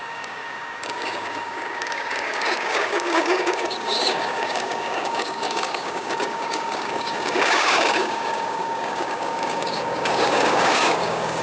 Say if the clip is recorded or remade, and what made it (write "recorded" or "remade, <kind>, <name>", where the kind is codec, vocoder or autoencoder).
remade, codec, DAC